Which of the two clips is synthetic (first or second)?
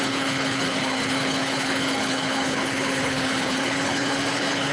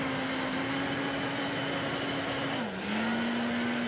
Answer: first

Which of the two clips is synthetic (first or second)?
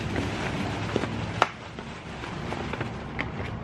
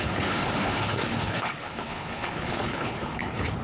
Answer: second